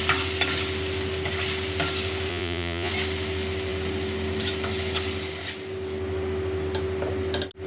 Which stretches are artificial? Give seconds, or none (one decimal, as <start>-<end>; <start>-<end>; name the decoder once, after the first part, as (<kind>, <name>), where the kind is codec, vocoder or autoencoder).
2.3-2.9 (vocoder, Vocos)